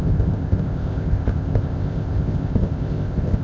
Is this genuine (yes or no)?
no